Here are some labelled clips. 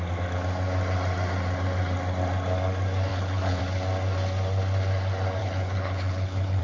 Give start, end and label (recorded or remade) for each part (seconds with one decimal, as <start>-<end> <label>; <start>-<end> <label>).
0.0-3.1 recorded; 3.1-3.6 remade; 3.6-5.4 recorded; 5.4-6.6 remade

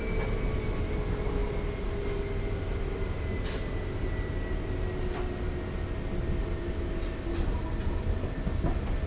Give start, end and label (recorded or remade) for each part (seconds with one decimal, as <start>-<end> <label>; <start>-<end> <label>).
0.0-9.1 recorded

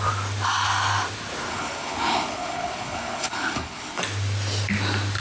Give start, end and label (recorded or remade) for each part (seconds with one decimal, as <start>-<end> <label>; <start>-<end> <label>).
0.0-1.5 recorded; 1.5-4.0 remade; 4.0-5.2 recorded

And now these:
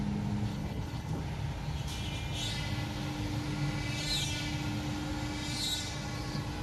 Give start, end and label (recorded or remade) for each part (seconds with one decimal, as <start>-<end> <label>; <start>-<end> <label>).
0.0-0.5 recorded; 0.5-1.2 remade; 1.2-6.6 recorded